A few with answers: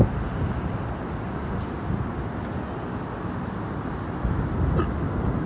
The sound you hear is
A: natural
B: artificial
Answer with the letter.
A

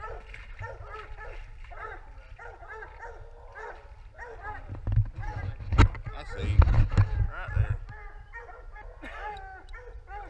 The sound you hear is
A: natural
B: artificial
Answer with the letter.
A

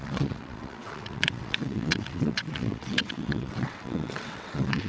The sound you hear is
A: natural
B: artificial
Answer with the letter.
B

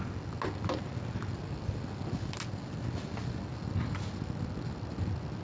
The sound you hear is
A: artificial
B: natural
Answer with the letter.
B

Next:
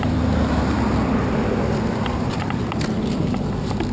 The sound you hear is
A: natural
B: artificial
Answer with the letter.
A